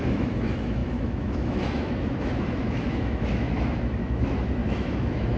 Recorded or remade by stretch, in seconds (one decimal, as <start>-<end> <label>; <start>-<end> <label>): 0.0-5.4 remade